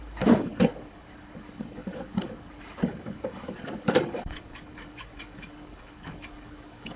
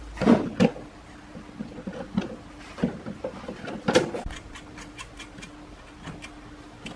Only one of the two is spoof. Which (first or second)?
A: first